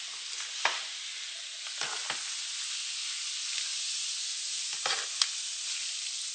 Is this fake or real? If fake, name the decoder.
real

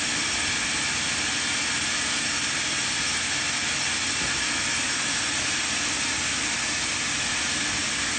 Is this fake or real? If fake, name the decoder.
real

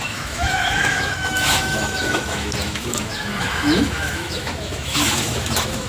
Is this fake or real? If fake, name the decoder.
fake, autoencoder, DAC-VAE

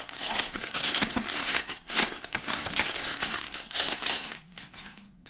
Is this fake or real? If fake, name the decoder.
fake, codec, SNAC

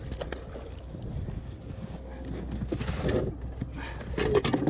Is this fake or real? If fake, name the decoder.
real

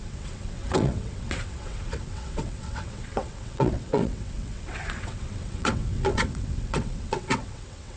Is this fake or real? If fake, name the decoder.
fake, vocoder, WaveNeXt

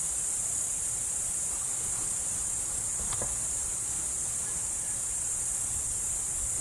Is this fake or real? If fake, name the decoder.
real